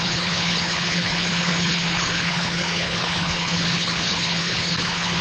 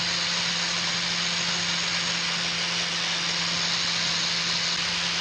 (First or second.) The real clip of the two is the second